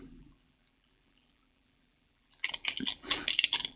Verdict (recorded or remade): remade